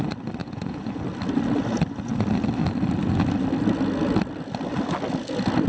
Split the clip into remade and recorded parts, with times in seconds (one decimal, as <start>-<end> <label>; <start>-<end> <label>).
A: 0.0-0.4 recorded; 0.4-1.0 remade; 1.0-5.7 recorded